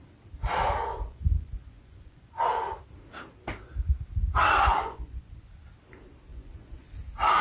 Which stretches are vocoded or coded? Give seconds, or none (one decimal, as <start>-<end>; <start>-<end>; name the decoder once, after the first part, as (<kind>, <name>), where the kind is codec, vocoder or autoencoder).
1.1-2.5 (vocoder, Vocos); 4.7-5.3; 6.3-6.9